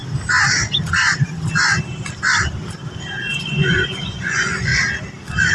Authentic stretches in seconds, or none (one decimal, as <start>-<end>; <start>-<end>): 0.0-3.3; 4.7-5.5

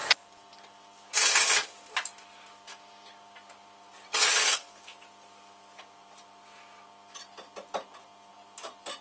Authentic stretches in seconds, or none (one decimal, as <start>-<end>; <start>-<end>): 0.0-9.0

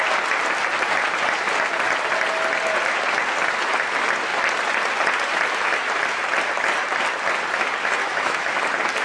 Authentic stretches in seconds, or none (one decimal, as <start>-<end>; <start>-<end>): 0.0-8.0; 8.6-9.0

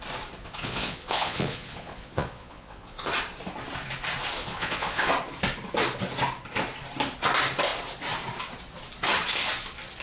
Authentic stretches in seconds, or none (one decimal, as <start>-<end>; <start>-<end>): 0.0-0.4; 3.1-4.4; 5.1-10.0

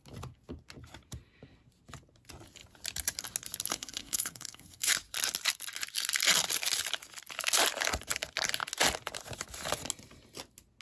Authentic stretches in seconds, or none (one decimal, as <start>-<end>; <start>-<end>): 0.0-3.7; 4.9-10.8

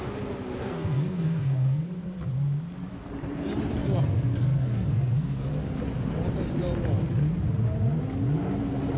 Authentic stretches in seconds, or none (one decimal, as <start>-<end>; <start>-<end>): 0.0-0.6; 1.9-3.8; 5.5-9.0